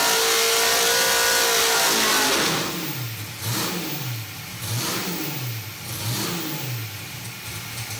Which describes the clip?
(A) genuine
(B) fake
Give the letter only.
A